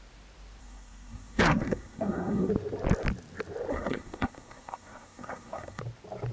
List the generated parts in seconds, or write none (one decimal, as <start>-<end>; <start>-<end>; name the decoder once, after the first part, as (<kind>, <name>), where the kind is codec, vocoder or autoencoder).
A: 0.6-2.5 (codec, SNAC); 3.7-5.8